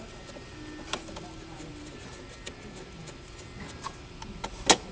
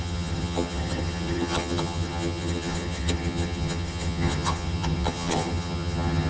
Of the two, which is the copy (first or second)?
second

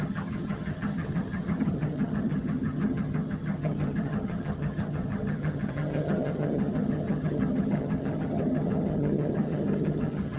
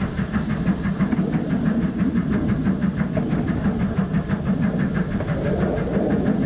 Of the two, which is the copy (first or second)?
first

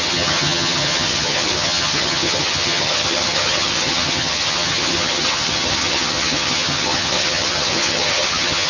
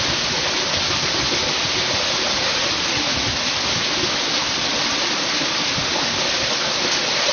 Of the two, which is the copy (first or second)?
first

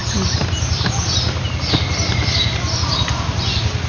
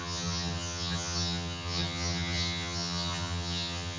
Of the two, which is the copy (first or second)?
second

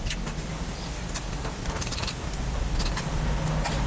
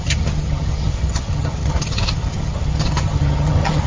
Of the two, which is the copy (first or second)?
second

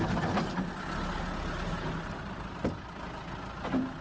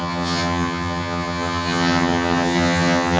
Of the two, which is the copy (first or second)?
second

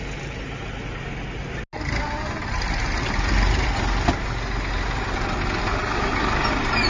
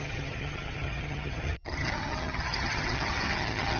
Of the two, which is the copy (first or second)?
second